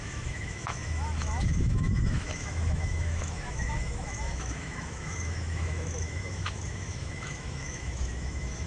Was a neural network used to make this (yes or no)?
yes